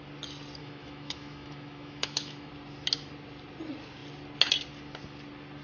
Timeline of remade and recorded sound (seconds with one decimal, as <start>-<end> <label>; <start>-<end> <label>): 0.0-0.6 recorded; 0.6-2.5 remade; 2.5-5.6 recorded